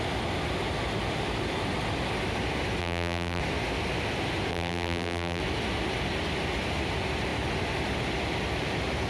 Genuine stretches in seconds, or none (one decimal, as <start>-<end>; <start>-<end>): 0.0-2.8; 3.4-4.5; 5.4-9.1